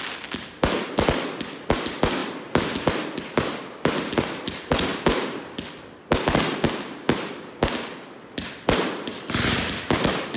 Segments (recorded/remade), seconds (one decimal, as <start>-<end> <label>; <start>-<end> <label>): 0.0-10.4 recorded